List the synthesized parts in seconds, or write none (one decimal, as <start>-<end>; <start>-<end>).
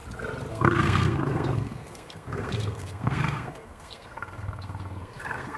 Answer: 0.5-5.6